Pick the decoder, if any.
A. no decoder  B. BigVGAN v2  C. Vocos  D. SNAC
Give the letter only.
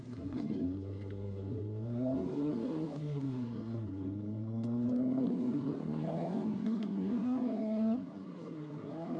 D